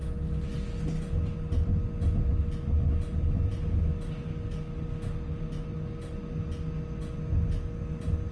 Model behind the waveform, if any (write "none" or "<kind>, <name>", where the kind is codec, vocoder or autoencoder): none